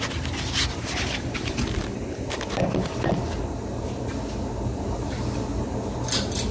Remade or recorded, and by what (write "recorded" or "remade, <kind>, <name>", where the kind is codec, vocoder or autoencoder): recorded